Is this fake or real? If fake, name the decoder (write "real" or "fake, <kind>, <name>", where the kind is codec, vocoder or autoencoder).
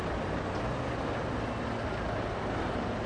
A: real